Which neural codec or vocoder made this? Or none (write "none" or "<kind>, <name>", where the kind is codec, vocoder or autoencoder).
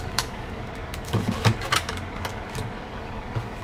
codec, DAC